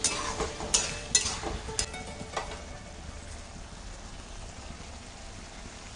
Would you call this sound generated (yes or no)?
no